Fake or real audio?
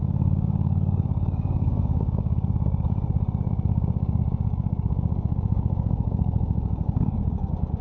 fake